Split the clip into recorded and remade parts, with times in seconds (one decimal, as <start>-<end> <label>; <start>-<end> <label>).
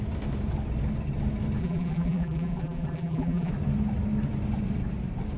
0.0-1.6 recorded; 1.6-3.5 remade; 3.5-5.4 recorded